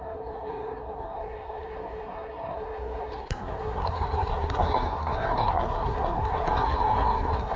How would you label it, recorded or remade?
remade